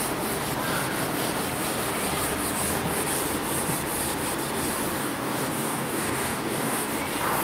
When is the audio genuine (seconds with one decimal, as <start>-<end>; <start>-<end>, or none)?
0.0-5.0; 6.9-7.4